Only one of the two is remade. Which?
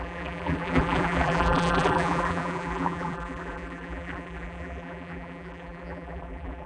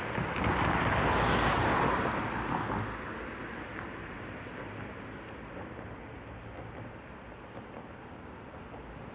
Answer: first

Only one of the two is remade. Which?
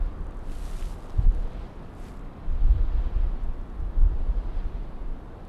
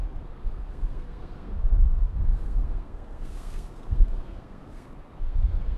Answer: second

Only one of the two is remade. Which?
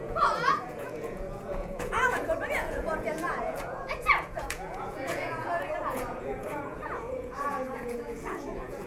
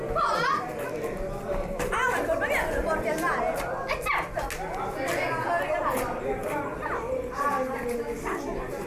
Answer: first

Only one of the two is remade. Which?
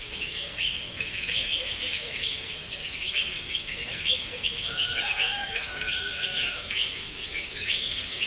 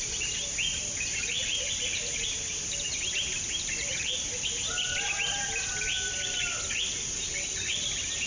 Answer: first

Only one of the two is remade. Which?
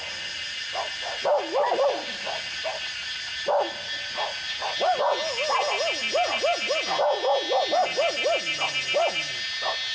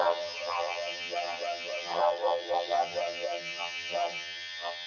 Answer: second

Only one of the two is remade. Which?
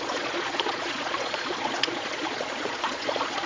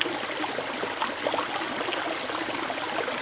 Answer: first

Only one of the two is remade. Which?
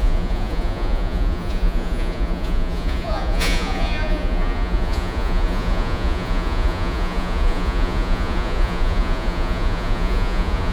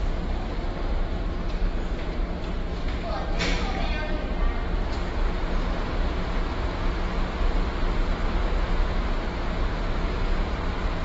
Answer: first